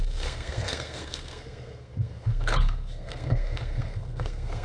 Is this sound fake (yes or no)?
yes